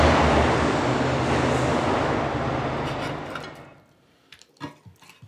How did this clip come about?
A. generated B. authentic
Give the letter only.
B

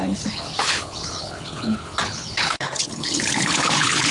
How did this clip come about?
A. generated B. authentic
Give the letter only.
A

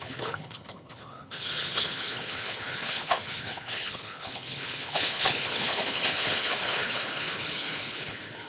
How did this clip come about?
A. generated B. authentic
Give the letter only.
A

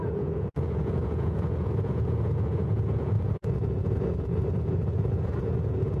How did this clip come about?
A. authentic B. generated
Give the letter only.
B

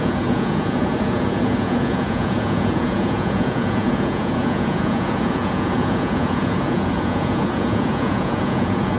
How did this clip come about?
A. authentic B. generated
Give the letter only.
B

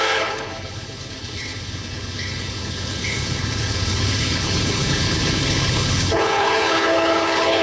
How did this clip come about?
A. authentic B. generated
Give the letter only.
B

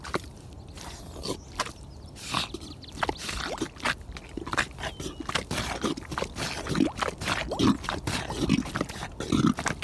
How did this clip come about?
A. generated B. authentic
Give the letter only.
B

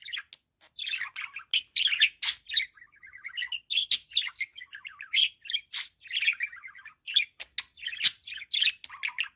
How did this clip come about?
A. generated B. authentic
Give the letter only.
B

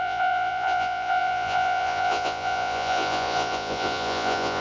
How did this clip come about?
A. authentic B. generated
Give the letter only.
B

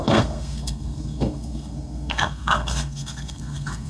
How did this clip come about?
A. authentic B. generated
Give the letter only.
B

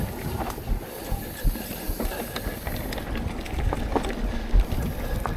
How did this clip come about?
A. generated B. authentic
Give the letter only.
B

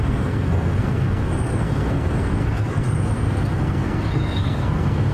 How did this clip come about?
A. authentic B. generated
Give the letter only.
B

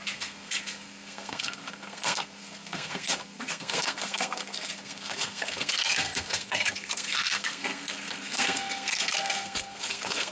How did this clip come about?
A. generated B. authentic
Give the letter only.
A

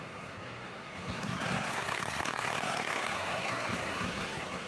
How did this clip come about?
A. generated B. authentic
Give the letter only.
A